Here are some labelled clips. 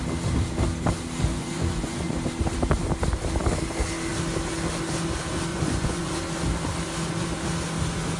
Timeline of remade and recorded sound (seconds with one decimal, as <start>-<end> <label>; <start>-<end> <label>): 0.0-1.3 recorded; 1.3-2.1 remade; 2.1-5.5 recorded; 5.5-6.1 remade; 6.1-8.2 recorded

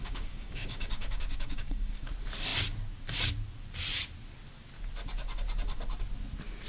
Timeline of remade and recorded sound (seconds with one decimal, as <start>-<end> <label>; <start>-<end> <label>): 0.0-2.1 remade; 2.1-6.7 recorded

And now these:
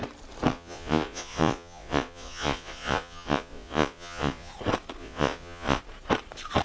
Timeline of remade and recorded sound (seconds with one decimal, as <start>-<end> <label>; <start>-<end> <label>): 0.0-0.5 recorded; 0.5-4.5 remade; 4.5-5.0 recorded; 5.0-5.8 remade; 5.8-6.6 recorded

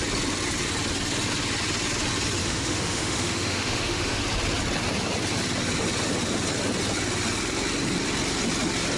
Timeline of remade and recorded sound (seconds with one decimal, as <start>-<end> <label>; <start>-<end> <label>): 0.0-2.4 recorded; 2.4-4.2 remade; 4.2-9.0 recorded

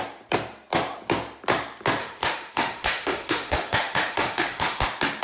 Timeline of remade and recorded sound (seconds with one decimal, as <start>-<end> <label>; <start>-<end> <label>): 0.0-2.0 recorded; 2.0-4.8 remade; 4.8-5.2 recorded

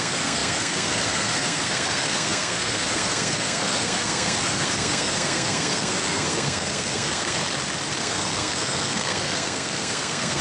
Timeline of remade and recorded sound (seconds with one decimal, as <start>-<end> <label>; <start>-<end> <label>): 0.0-7.4 remade; 7.4-8.0 recorded; 8.0-10.4 remade

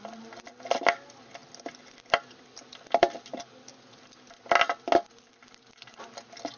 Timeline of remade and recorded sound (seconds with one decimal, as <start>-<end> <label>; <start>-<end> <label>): 0.0-1.4 remade; 1.4-2.0 recorded; 2.0-3.7 remade; 3.7-5.3 recorded; 5.3-6.6 remade

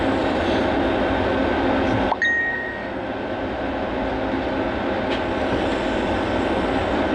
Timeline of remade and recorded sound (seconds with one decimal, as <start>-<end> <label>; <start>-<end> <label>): 0.0-2.4 recorded; 2.4-3.1 remade; 3.1-7.1 recorded